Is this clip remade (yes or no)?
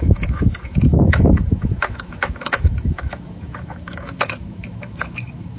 yes